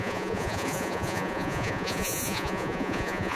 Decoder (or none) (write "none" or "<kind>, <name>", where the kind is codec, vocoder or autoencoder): vocoder, Vocos